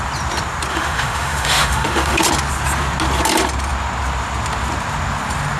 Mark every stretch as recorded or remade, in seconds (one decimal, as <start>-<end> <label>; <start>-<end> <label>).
0.0-0.7 recorded; 0.7-2.2 remade; 2.2-5.6 recorded